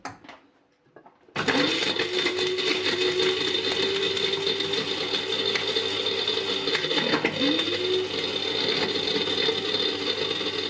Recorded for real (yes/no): yes